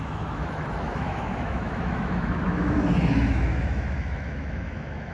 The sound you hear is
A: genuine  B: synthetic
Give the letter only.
B